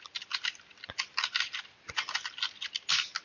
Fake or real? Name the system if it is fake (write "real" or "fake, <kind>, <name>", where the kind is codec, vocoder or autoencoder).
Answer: real